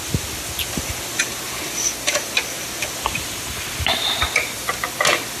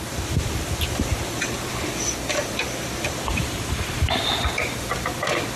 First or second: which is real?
first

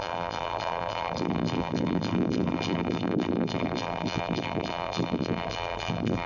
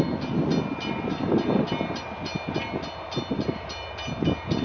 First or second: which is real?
second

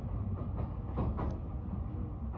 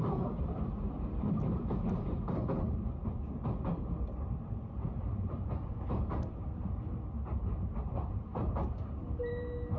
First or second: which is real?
first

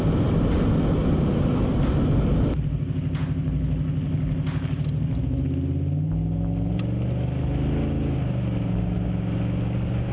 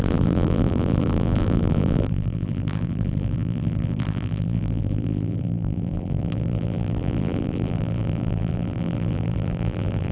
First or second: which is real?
first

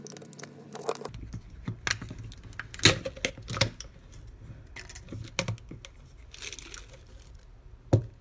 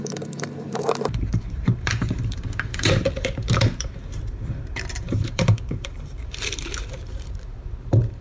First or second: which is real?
first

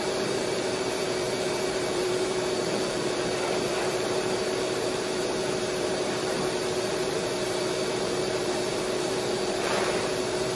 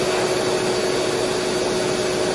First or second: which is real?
second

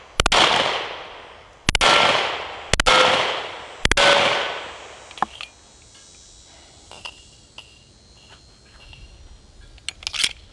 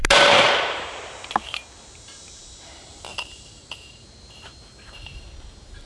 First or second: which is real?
first